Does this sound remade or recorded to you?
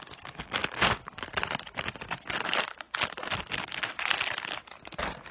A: recorded